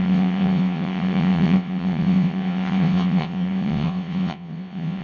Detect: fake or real fake